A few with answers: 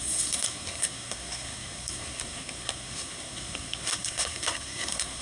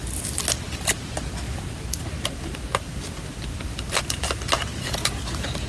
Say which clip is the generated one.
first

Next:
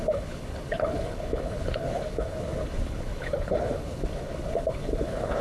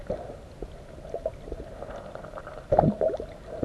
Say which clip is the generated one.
first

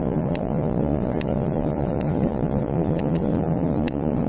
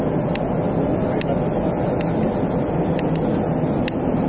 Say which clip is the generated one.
first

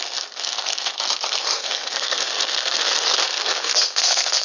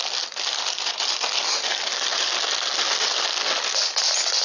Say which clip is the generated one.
first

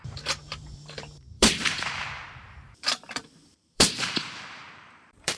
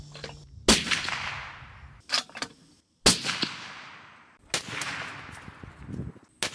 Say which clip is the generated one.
first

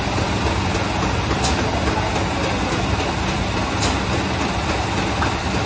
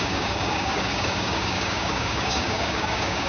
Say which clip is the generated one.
second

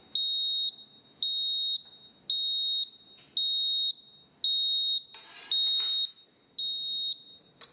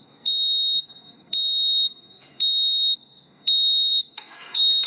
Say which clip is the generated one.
second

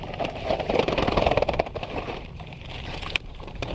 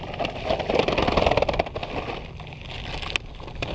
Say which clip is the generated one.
first